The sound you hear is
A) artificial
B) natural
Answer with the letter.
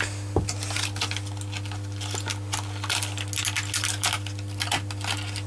B